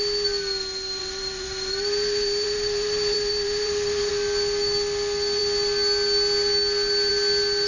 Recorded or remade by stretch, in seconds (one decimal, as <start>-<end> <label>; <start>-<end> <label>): 0.0-1.0 recorded; 1.0-4.1 remade; 4.1-7.7 recorded